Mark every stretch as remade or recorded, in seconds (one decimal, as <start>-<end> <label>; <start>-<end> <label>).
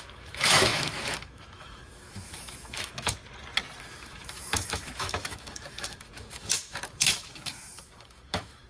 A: 0.0-3.2 remade; 3.2-3.8 recorded; 3.8-8.7 remade